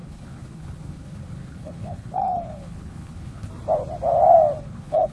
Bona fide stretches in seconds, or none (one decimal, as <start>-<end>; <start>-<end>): 3.5-4.6